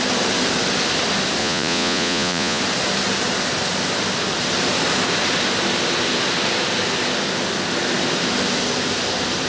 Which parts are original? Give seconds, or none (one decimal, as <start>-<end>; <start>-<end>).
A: 0.0-1.4; 2.6-9.5